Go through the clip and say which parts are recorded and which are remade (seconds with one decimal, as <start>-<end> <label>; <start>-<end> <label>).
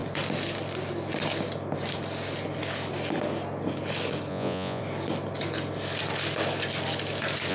0.0-4.3 recorded; 4.3-4.8 remade; 4.8-7.5 recorded